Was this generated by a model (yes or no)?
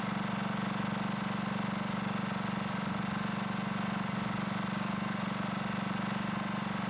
no